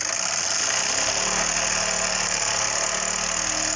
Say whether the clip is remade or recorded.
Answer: recorded